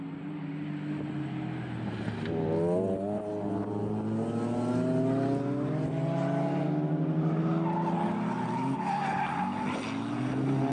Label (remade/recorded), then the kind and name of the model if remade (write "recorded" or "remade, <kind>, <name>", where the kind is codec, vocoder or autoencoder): recorded